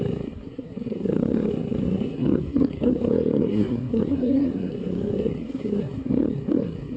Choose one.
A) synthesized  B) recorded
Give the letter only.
A